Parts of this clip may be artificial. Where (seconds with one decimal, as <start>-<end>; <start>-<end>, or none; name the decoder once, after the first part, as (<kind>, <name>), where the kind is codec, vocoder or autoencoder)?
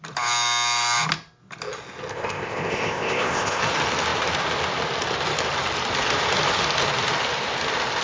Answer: 2.1-3.6 (codec, ZipCodec)